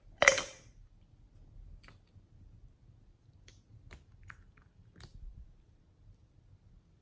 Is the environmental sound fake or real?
real